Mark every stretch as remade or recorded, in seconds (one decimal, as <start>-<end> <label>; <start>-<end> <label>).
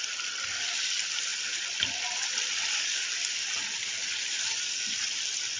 0.0-5.6 recorded